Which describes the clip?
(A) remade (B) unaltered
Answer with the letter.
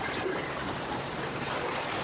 A